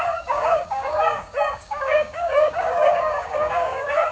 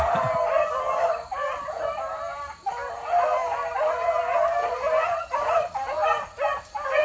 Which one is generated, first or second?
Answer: first